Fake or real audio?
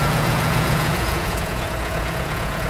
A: fake